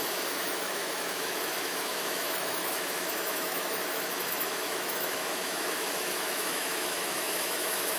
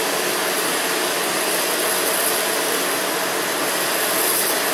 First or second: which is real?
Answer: second